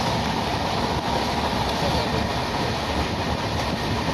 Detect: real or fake real